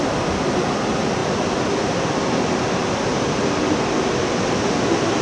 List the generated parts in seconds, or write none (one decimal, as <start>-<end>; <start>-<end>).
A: none